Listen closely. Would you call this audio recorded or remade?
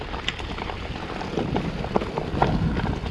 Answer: recorded